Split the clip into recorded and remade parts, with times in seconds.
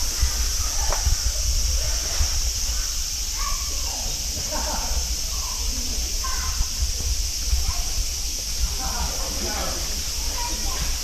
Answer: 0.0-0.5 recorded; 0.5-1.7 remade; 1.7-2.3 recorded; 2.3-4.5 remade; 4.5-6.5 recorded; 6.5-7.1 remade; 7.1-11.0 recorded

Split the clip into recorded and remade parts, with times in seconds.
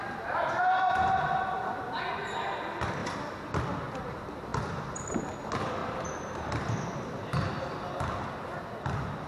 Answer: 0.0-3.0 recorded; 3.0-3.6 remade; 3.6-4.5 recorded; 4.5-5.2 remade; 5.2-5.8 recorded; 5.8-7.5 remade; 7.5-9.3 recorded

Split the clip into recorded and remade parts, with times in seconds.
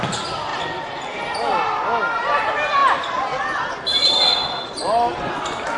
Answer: 0.0-0.5 recorded; 0.5-2.2 remade; 2.2-2.8 recorded; 2.8-5.3 remade; 5.3-5.8 recorded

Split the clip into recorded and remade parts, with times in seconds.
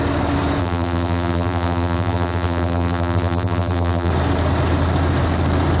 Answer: 0.0-0.6 recorded; 0.6-4.1 remade; 4.1-5.8 recorded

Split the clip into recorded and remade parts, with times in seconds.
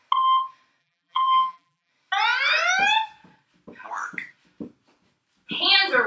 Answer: 0.0-0.8 recorded; 0.8-1.9 remade; 1.9-6.1 recorded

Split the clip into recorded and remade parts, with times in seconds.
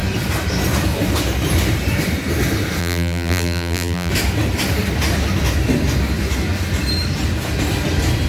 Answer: 0.0-2.8 recorded; 2.8-4.1 remade; 4.1-8.3 recorded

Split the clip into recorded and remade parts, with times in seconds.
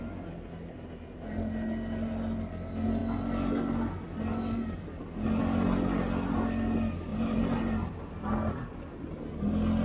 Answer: 0.0-7.1 recorded; 7.1-8.1 remade; 8.1-9.8 recorded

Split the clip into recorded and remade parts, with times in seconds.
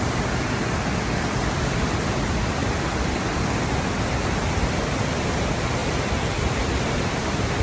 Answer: 0.0-7.6 recorded